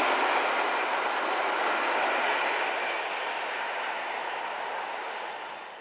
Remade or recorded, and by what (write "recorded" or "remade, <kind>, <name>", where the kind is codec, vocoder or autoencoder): recorded